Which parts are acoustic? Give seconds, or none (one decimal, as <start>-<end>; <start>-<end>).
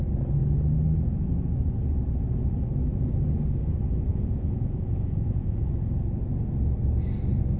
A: 0.0-4.1; 5.7-7.6